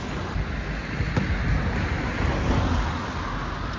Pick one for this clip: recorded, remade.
recorded